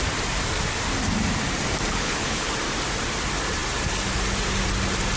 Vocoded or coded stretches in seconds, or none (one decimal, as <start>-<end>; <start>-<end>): 1.9-2.5